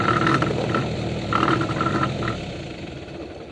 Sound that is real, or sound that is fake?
fake